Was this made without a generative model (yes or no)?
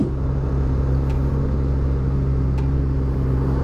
yes